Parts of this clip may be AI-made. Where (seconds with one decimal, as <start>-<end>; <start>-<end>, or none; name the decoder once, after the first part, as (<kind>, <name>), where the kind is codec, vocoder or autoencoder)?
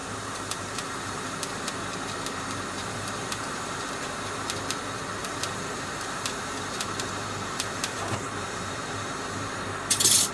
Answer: 0.0-1.7 (vocoder, BigVGAN v2); 2.8-3.9; 5.2-10.3